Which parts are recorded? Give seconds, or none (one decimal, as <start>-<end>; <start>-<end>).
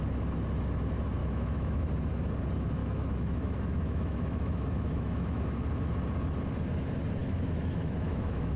0.0-1.2; 1.9-2.8; 5.4-7.2